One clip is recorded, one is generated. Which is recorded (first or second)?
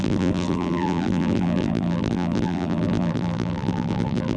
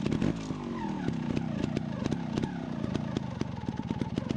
second